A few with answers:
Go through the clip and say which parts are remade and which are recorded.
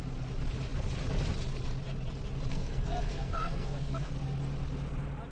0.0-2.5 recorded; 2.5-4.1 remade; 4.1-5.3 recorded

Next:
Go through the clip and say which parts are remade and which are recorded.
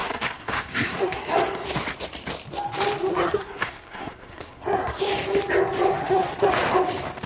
0.0-1.2 remade; 1.2-3.1 recorded; 3.1-5.0 remade; 5.0-6.0 recorded; 6.0-6.5 remade; 6.5-7.3 recorded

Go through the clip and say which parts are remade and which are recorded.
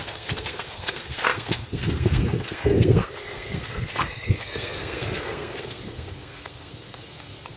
0.0-7.6 remade